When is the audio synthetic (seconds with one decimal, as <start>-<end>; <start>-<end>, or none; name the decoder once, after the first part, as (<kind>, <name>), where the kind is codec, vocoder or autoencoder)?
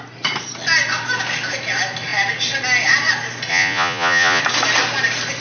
3.5-4.4 (vocoder, Vocos)